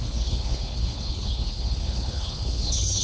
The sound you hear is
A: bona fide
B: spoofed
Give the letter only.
B